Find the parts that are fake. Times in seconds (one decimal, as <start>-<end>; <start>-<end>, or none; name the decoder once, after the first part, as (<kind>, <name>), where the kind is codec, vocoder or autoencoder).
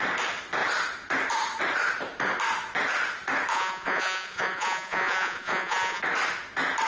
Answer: 3.5-6.0 (vocoder, Vocos)